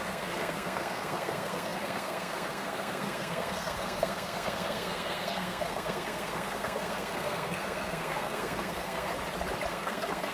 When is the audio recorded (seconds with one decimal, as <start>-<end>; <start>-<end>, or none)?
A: 9.1-9.7